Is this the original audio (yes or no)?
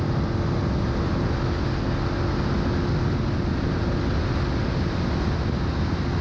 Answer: yes